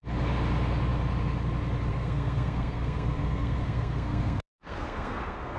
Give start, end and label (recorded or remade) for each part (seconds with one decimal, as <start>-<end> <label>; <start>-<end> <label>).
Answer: 0.0-1.9 recorded; 1.9-5.6 remade